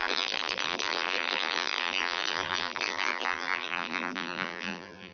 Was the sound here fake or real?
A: fake